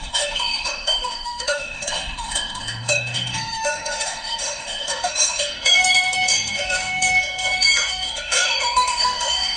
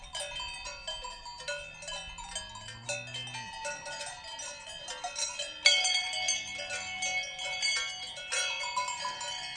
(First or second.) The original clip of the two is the second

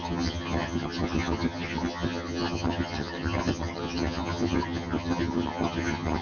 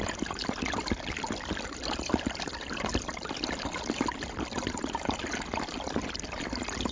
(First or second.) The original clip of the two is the second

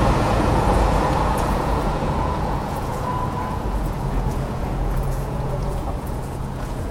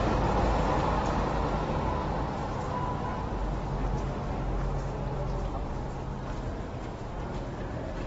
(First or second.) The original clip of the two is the second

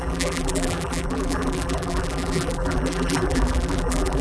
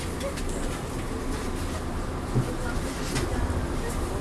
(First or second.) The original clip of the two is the second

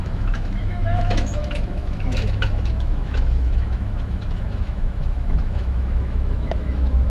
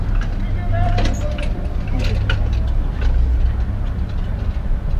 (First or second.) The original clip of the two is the second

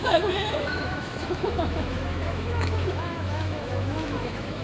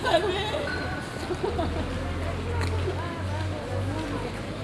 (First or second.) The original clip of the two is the second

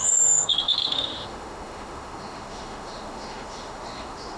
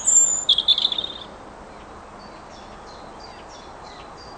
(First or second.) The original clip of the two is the second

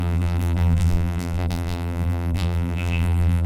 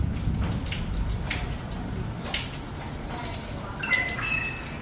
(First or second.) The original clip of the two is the second